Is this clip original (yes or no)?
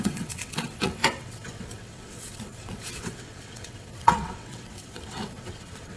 no